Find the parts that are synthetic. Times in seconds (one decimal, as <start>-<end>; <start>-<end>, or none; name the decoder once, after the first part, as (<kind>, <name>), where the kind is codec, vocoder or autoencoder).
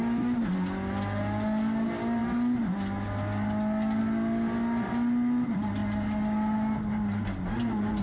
none